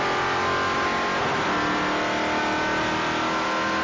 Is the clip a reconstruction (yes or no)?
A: no